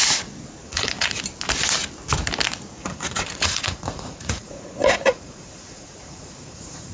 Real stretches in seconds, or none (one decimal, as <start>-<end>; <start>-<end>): 0.0-0.6; 1.2-2.8